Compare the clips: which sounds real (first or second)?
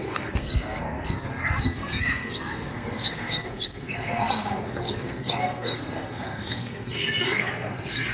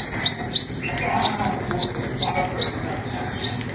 second